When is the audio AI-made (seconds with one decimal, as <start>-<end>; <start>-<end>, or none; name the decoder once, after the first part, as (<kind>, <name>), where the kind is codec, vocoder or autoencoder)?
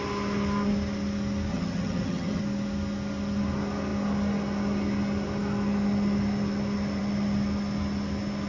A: 1.5-2.4 (vocoder, HiFi-GAN)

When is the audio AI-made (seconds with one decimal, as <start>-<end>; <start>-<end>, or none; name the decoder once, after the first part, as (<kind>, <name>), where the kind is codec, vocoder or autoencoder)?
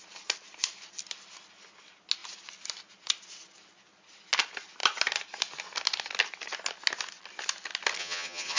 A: 8.0-8.6 (vocoder, HiFi-GAN)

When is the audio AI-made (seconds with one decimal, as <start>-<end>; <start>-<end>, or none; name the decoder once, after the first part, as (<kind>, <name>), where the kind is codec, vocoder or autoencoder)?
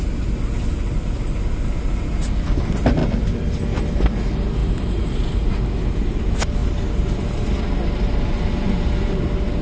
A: none